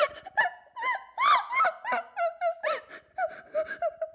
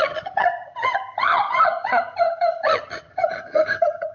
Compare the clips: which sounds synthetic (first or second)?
second